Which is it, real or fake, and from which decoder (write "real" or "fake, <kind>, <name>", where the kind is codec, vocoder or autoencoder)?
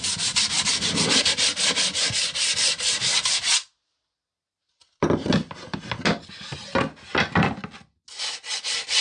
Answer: real